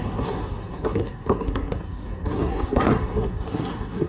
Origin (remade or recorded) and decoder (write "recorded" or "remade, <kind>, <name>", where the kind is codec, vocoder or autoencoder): remade, codec, SNAC